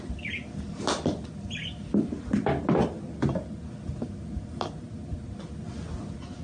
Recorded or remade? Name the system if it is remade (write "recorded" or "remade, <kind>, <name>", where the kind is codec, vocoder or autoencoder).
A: recorded